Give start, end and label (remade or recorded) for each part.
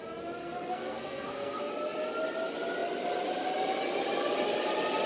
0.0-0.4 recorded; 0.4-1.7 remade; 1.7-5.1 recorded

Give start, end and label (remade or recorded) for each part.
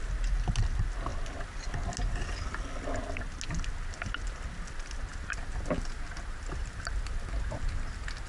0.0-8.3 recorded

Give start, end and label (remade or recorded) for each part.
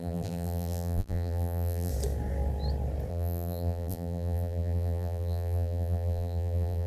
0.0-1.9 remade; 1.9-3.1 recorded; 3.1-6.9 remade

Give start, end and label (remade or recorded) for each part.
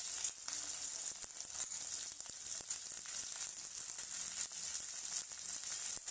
0.0-6.1 recorded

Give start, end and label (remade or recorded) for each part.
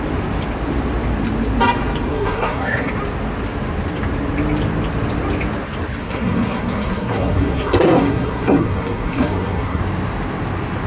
0.0-2.1 recorded; 2.1-2.9 remade; 2.9-6.0 recorded; 6.0-9.8 remade; 9.8-10.9 recorded